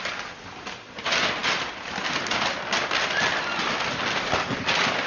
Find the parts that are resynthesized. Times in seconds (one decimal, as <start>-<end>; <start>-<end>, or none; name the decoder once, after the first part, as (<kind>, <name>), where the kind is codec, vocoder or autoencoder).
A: none